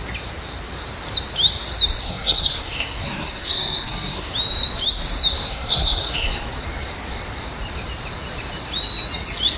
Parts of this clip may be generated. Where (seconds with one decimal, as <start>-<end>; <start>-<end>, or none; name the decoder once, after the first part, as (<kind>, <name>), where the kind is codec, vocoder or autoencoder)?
2.0-4.3 (codec, SNAC); 5.3-6.4